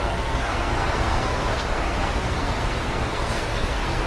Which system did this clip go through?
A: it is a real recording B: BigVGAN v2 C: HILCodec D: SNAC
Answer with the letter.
D